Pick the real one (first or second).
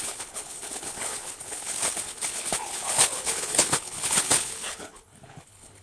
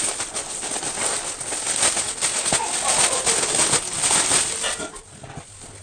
second